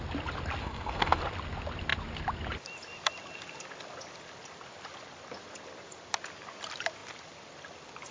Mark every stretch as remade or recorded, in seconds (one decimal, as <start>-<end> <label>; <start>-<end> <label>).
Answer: 0.0-0.6 recorded; 0.6-1.2 remade; 1.2-8.1 recorded